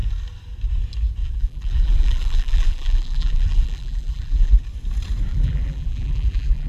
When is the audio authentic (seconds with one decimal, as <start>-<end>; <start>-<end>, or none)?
0.0-1.2; 4.5-5.3